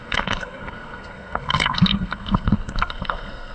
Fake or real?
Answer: fake